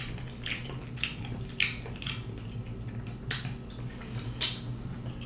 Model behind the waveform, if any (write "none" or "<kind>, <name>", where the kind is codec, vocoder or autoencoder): none